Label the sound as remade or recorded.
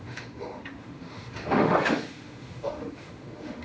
remade